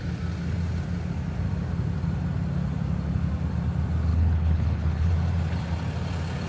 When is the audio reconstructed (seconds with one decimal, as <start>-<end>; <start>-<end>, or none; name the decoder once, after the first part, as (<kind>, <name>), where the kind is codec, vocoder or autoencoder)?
4.1-5.1 (codec, HILCodec)

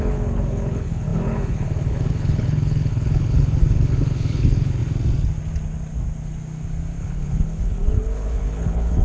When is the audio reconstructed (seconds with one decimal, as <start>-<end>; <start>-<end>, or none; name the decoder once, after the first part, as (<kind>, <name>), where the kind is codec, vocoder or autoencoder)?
0.0-4.8 (codec, HILCodec); 7.0-9.0

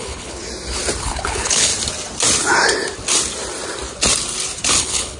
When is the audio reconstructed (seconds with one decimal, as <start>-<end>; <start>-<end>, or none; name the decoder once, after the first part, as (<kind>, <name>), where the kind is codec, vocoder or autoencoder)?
0.0-0.4 (codec, HILCodec); 1.0-1.7; 4.8-5.2

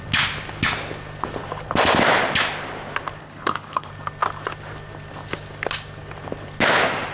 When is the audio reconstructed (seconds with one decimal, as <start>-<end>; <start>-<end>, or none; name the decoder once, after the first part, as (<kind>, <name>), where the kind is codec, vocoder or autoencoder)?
3.2-3.9 (codec, HILCodec)

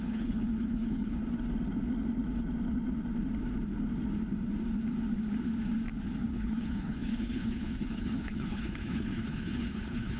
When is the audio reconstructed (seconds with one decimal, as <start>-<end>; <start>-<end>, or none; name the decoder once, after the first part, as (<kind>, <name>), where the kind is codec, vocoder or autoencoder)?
0.0-1.2 (codec, HILCodec); 6.2-10.2

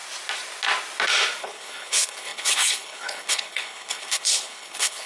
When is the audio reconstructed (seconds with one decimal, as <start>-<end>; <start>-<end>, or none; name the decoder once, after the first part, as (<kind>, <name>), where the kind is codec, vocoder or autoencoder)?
1.4-5.1 (codec, HILCodec)

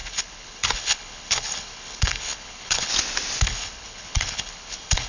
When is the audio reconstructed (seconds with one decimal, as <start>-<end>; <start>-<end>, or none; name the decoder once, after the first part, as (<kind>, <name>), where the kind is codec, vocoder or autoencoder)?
0.0-2.9 (codec, HILCodec); 3.4-5.1